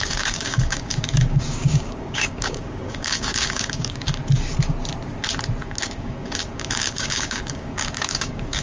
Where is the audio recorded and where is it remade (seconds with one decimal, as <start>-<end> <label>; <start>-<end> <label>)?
0.0-4.2 remade; 4.2-5.6 recorded; 5.6-8.6 remade